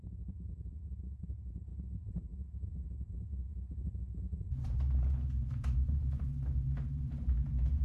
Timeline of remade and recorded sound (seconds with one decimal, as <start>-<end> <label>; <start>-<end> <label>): 0.0-7.8 remade